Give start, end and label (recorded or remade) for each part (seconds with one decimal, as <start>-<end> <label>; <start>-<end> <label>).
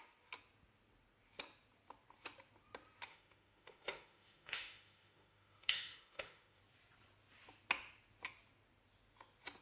0.0-3.1 recorded; 3.1-6.6 remade; 6.6-9.6 recorded